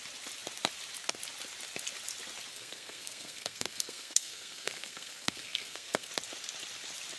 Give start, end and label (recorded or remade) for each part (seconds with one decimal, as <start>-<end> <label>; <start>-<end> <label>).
0.0-2.5 recorded; 2.5-6.1 remade; 6.1-7.2 recorded